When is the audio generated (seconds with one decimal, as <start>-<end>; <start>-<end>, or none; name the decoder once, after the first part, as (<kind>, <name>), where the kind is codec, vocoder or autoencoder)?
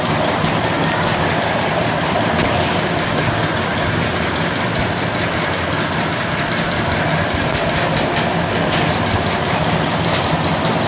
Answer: 3.7-4.3 (vocoder, BigVGAN v2)